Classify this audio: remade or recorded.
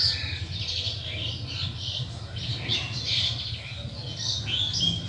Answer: recorded